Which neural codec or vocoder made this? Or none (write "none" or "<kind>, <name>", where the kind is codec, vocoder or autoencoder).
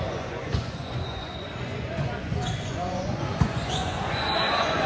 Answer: vocoder, Vocos